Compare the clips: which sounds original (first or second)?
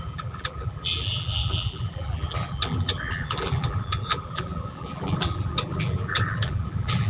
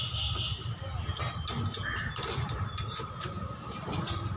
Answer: second